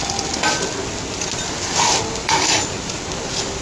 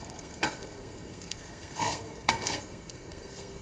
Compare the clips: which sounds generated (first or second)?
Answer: second